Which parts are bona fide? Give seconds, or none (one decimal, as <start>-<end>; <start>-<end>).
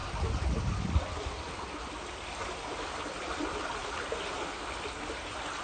none